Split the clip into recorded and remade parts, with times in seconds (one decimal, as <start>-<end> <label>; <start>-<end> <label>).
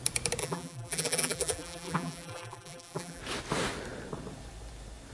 0.0-0.4 recorded; 0.4-3.2 remade; 3.2-5.1 recorded